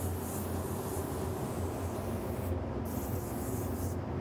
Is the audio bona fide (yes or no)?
yes